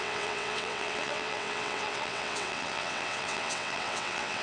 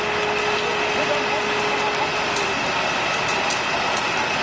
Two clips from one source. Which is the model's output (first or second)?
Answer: first